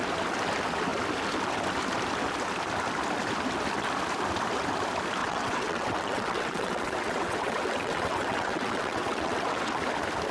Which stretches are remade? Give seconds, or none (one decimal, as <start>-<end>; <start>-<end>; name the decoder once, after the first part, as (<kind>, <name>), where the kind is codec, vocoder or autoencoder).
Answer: 5.2-9.8 (vocoder, WaveNeXt)